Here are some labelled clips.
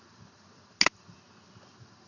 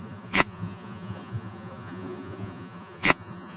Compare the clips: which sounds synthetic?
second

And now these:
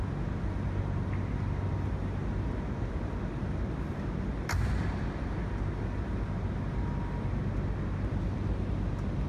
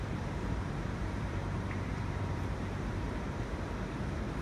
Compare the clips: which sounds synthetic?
second